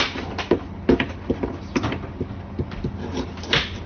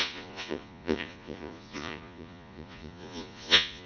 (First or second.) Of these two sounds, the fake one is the second